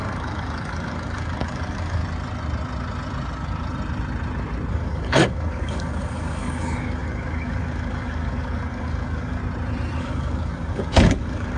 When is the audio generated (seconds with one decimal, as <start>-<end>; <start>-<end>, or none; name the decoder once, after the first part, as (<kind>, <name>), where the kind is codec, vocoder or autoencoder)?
0.0-2.0 (codec, DAC); 4.7-9.4; 10.0-11.6